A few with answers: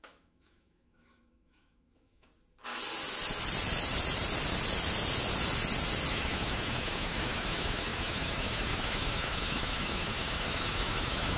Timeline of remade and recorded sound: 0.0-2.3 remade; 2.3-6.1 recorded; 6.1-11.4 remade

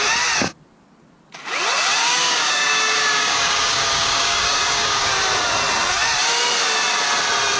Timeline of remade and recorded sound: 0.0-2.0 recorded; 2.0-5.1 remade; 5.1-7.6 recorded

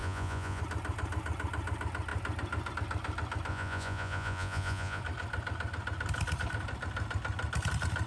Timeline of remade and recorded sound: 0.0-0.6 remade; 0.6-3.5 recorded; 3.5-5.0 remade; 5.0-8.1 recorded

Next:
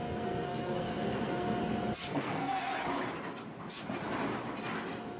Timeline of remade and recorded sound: 0.0-1.6 remade; 1.6-2.1 recorded; 2.1-2.7 remade; 2.7-5.2 recorded

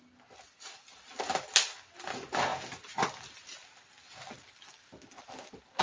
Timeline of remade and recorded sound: 0.0-5.8 recorded